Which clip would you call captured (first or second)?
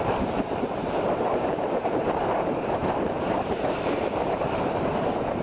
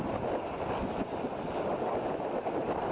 second